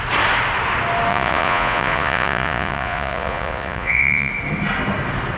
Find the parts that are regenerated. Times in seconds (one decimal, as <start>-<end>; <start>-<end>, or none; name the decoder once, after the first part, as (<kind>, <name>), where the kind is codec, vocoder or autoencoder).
1.1-4.3 (vocoder, Vocos)